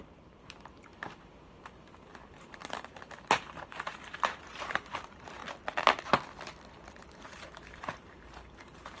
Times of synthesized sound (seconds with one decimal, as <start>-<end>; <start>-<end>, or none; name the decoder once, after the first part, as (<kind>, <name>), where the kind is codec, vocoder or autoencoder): 0.0-5.4 (vocoder, BigVGAN v2); 6.9-9.0